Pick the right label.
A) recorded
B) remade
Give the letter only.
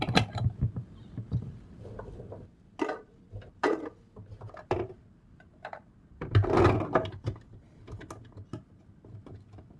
A